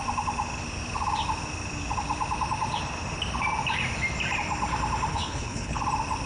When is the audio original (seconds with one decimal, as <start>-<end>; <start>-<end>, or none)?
0.0-5.1; 5.8-6.3